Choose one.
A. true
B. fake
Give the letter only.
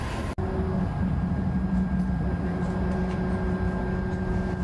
A